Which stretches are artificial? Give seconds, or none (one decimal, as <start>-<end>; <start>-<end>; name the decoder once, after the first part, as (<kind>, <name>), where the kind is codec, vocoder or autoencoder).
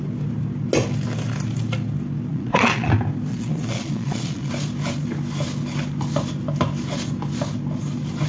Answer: 2.3-2.9 (vocoder, Vocos); 3.3-4.5